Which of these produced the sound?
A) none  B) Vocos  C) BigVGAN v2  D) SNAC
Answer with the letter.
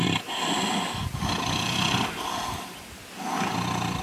A